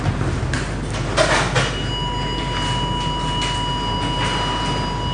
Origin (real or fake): real